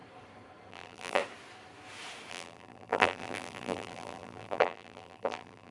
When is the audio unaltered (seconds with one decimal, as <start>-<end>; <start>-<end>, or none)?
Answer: 0.0-0.7; 1.2-2.3